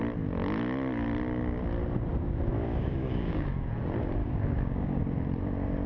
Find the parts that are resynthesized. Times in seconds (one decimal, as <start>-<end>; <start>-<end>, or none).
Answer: 2.1-3.7; 4.2-5.0